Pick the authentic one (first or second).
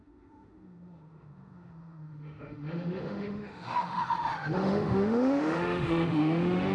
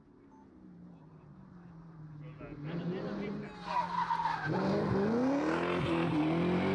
second